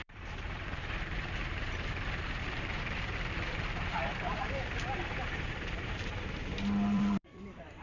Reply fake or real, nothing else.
fake